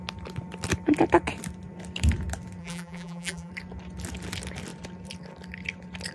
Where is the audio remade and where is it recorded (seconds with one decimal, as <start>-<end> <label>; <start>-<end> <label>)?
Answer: 0.0-2.6 recorded; 2.6-3.5 remade; 3.5-6.1 recorded